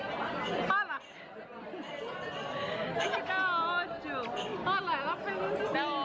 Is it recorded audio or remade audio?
recorded